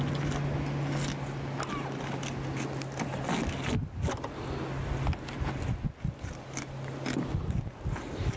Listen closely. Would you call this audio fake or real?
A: real